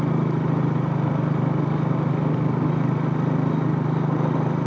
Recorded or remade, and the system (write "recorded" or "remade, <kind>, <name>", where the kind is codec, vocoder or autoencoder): recorded